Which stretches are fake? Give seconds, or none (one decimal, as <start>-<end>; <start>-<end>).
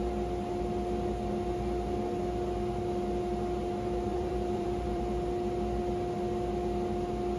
4.1-5.0